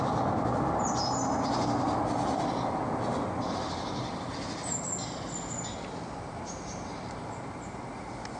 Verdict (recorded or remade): recorded